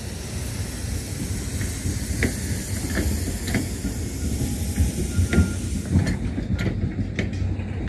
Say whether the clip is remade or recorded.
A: recorded